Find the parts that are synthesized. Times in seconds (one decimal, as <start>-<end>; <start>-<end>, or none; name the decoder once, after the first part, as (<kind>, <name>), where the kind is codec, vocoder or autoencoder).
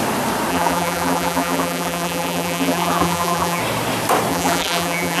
0.5-3.6 (vocoder, BigVGAN v2); 4.3-5.2